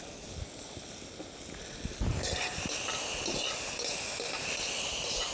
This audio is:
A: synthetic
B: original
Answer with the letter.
B